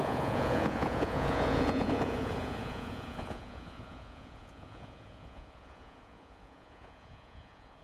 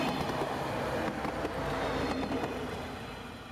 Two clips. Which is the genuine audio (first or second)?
second